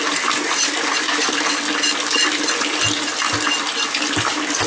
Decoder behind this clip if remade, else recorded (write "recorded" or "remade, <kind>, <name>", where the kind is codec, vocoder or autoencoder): recorded